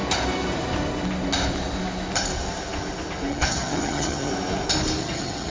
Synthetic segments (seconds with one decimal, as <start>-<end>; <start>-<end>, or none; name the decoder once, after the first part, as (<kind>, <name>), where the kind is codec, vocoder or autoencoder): 3.3-4.3 (vocoder, HiFi-GAN); 5.0-5.5